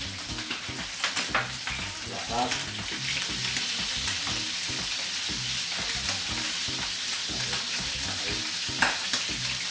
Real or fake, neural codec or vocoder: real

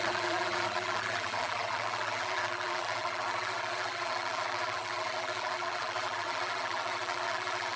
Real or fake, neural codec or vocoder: fake, vocoder, BigVGAN v2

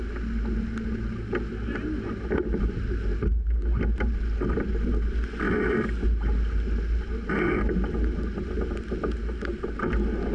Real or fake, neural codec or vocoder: real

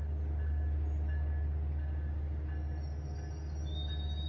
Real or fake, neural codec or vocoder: real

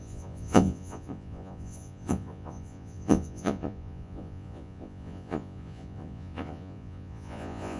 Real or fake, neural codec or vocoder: fake, vocoder, Vocos